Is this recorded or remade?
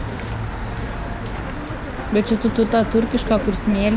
recorded